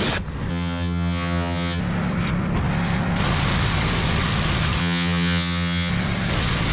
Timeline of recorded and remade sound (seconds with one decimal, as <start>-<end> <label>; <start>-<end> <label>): 0.0-0.5 recorded; 0.5-1.8 remade; 1.8-4.8 recorded; 4.8-5.9 remade; 5.9-6.7 recorded